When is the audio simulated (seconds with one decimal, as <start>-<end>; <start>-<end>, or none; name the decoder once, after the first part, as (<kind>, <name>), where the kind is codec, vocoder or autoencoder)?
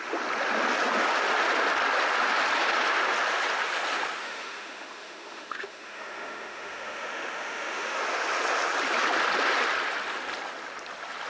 4.2-8.0 (autoencoder, DAC-VAE)